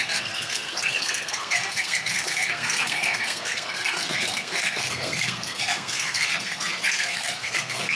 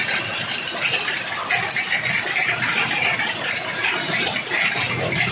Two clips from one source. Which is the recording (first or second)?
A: second